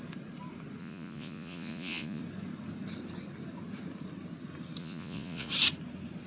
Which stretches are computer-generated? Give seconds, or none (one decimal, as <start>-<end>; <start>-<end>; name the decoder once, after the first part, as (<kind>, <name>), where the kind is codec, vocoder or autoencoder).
0.8-2.2 (vocoder, Vocos); 4.8-5.5